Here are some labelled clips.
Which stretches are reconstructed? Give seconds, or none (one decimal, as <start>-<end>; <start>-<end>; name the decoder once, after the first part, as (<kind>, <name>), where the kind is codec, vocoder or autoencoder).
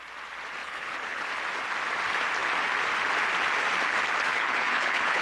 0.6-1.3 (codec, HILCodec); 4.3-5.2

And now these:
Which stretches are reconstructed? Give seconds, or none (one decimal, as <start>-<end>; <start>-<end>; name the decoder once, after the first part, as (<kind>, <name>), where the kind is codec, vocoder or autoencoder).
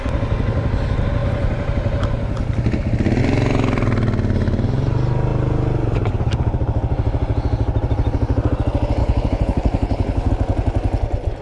9.0-10.3 (codec, HILCodec)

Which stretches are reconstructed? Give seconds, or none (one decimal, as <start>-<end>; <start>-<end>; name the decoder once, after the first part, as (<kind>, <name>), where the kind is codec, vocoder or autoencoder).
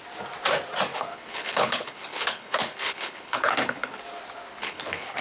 0.9-4.0 (codec, HILCodec); 4.6-5.2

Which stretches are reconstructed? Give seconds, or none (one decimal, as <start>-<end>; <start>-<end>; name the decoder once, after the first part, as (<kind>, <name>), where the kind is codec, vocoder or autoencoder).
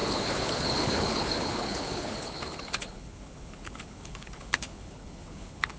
0.0-5.8 (codec, HILCodec)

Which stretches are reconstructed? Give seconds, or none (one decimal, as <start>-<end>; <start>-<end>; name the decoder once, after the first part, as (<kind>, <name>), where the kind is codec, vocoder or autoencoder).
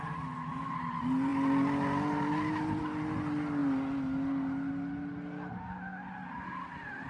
none